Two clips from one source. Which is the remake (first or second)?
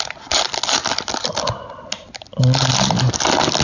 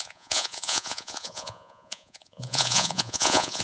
second